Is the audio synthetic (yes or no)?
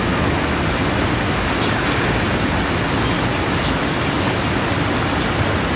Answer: no